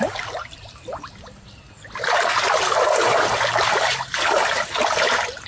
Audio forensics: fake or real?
real